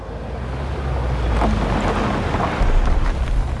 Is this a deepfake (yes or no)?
no